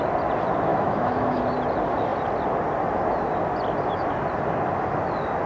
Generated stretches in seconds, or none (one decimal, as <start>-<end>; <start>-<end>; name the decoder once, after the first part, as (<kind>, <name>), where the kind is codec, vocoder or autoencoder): 0.7-1.4 (autoencoder, DAC-VAE)